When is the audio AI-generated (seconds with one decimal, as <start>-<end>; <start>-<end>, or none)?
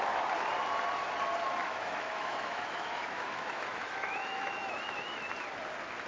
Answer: 1.6-5.3